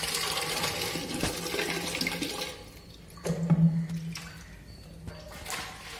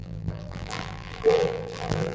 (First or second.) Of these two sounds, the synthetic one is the second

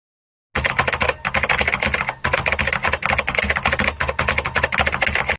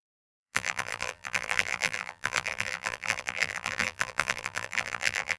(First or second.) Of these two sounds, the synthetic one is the second